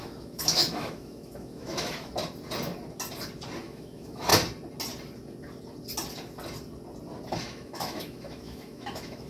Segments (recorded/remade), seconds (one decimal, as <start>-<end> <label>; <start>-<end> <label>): 0.0-2.1 remade; 2.1-3.6 recorded; 3.6-4.3 remade; 4.3-7.4 recorded; 7.4-9.3 remade